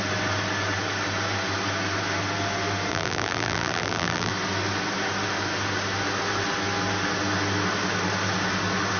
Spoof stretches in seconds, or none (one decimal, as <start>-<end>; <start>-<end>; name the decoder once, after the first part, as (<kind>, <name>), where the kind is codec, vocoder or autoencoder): 2.9-4.3 (vocoder, BigVGAN v2)